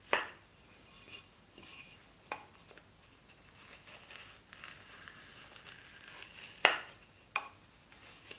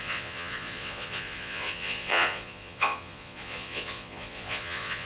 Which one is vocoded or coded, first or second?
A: second